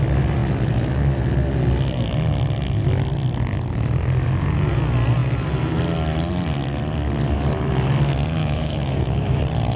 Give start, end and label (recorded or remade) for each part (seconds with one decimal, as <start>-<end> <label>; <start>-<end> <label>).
0.0-8.4 recorded; 8.4-9.4 remade; 9.4-9.8 recorded